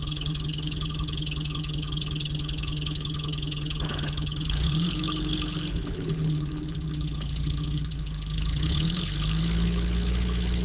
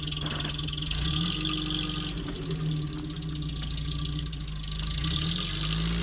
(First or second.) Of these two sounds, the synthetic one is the first